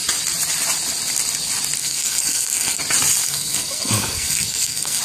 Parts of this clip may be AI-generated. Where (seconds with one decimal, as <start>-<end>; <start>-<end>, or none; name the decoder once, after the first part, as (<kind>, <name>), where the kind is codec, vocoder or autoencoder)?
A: 1.8-2.8 (codec, SNAC); 3.2-5.0